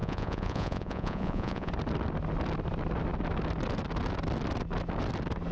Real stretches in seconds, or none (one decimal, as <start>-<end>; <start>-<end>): 1.7-5.5

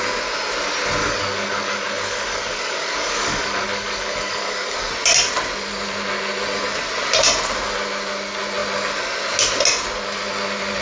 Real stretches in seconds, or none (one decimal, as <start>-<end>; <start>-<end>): 0.0-1.0; 4.9-10.8

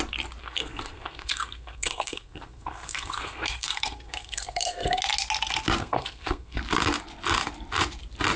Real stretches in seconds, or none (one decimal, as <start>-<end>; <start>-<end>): 0.0-0.4; 5.0-5.8; 6.6-8.4

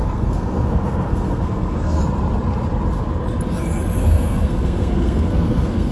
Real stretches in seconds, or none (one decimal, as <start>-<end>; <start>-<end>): 2.0-4.0

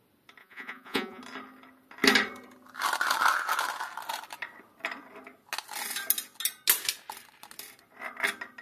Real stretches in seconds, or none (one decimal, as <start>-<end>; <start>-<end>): 0.0-0.4; 1.2-8.6